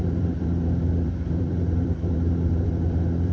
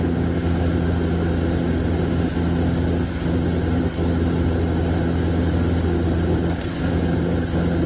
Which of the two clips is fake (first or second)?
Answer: first